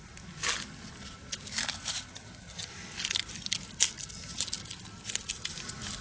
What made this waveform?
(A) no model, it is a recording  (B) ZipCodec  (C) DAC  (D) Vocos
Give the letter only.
A